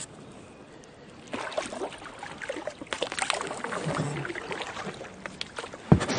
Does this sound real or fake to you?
real